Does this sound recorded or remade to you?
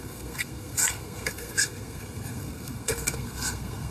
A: remade